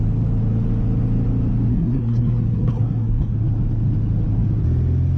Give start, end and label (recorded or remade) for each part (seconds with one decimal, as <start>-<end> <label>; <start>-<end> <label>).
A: 0.0-1.7 recorded; 1.7-3.3 remade; 3.3-5.2 recorded